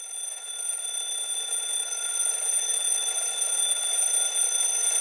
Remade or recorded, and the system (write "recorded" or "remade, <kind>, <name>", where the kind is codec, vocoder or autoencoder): remade, vocoder, Vocos